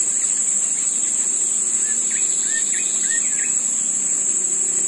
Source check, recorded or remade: recorded